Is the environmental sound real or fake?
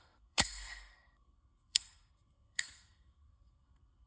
fake